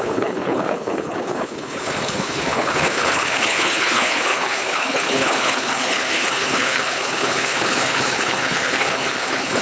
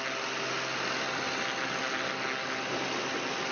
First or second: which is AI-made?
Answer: first